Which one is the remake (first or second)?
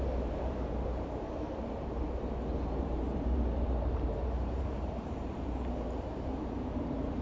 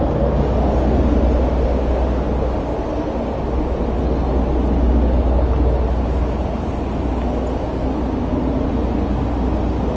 first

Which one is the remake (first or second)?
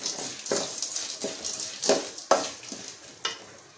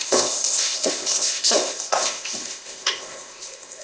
second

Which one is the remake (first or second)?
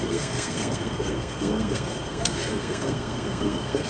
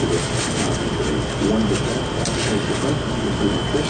first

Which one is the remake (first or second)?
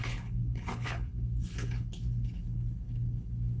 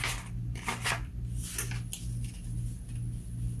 first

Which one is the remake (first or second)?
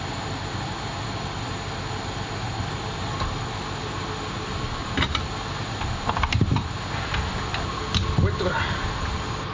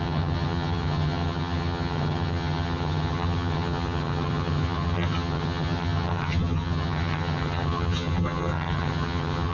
second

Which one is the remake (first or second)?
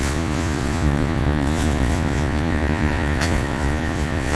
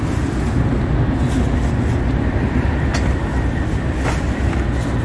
first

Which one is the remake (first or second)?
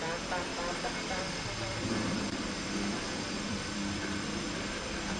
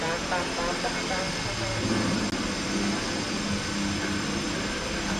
first